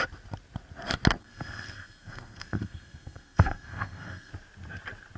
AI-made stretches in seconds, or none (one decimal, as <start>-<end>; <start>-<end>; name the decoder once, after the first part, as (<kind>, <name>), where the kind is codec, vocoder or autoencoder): 1.2-4.3 (codec, SNAC)